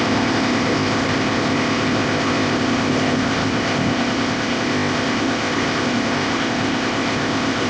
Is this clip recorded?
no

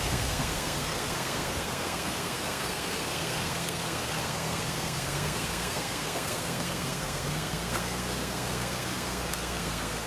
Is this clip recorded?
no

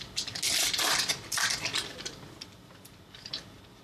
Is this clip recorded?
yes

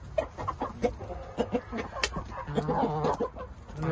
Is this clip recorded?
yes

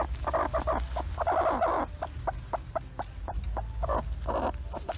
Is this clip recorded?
yes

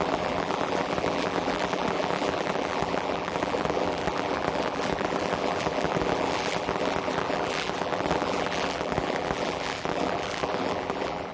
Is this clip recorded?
no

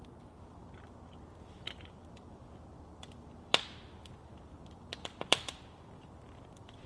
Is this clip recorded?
no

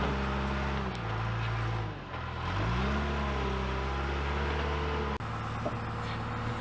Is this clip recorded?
yes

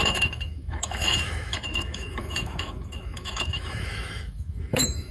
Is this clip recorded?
no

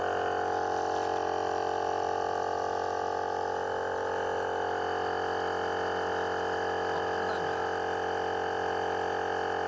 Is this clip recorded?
yes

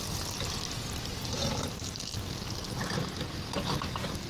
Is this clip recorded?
yes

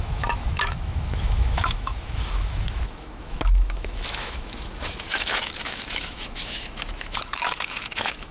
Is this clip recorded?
no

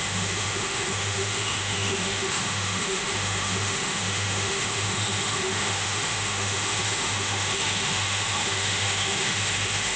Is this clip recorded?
no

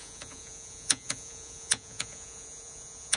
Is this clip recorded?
no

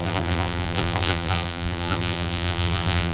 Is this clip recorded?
no